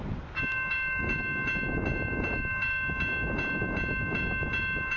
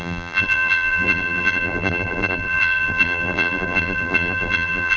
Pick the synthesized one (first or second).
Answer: second